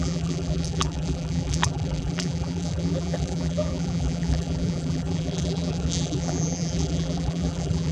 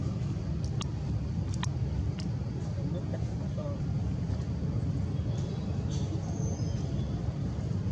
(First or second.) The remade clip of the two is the first